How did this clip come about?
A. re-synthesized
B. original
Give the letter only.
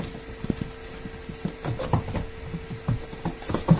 B